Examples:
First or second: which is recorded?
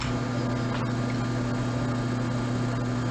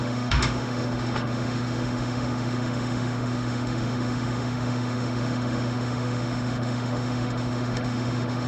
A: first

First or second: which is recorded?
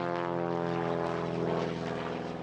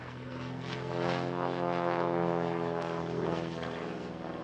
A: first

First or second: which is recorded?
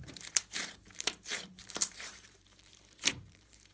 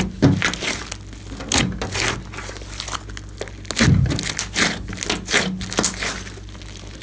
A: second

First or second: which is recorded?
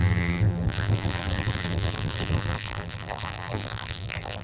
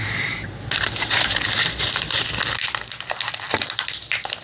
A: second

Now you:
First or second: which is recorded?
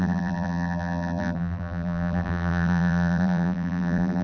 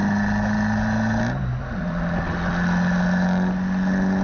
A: second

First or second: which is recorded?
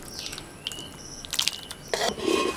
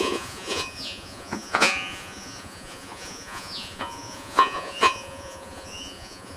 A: first